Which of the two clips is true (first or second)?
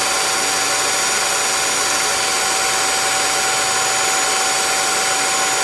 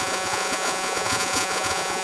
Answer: first